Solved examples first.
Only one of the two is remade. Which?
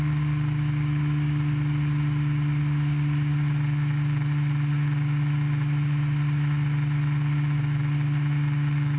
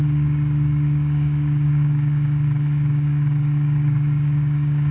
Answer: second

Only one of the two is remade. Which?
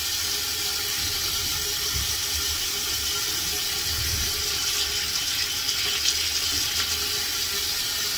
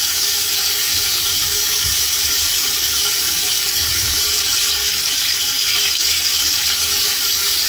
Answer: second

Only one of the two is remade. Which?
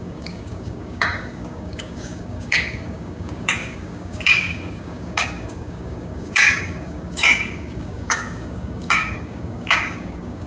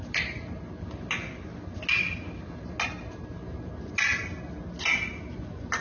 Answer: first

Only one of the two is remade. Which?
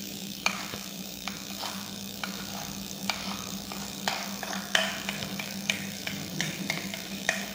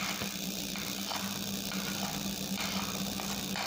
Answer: first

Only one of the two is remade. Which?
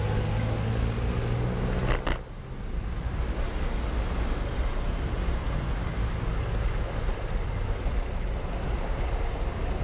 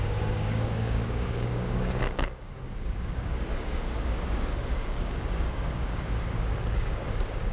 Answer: second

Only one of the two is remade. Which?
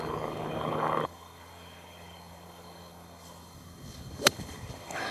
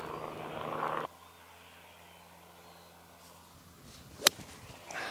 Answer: first